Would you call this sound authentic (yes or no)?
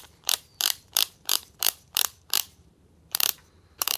no